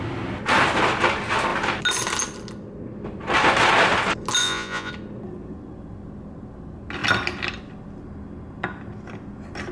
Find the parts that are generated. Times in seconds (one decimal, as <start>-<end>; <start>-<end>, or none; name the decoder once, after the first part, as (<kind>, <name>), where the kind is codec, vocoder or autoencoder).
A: 4.4-4.9 (vocoder, Vocos)